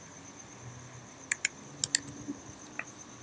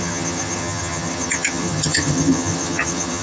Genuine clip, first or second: first